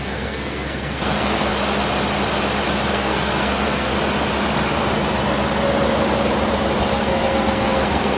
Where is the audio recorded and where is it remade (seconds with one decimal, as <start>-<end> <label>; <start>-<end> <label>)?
0.0-1.5 remade; 1.5-2.9 recorded; 2.9-3.9 remade; 3.9-6.9 recorded; 6.9-8.2 remade